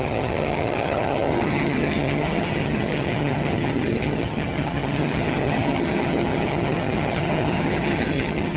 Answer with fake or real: fake